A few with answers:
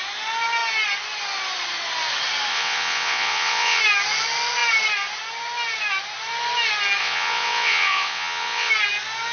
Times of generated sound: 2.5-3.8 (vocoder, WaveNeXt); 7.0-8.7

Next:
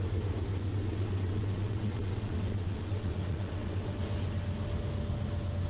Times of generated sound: 0.5-3.9 (vocoder, WaveNeXt)

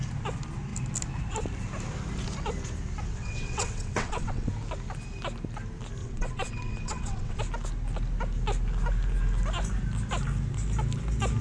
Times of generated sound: 3.1-4.5 (vocoder, WaveNeXt); 6.0-7.4

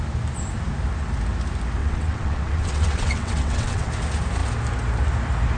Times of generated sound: 1.8-3.9 (vocoder, WaveNeXt)